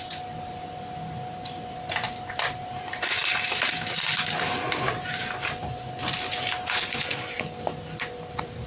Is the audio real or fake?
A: real